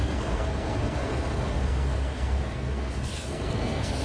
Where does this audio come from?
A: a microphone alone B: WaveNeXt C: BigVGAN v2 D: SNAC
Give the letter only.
D